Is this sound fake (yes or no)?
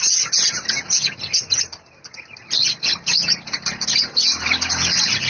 no